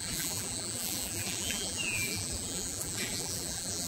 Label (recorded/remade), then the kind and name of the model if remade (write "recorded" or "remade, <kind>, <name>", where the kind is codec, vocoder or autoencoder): remade, vocoder, BigVGAN v2